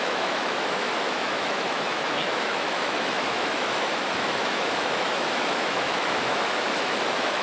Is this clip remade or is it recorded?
remade